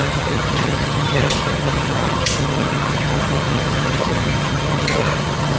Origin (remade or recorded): remade